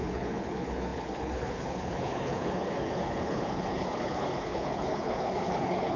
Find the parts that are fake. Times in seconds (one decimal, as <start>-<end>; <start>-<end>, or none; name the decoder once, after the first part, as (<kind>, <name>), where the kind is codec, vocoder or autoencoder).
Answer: 0.0-6.0 (codec, HILCodec)